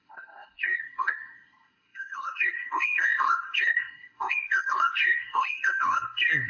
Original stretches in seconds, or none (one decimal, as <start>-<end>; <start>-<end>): none